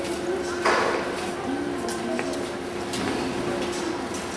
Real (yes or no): yes